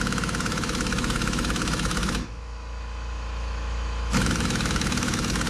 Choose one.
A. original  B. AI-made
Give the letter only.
B